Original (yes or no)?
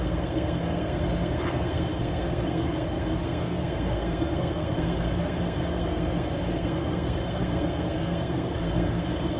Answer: no